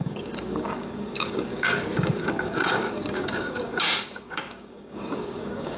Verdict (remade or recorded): remade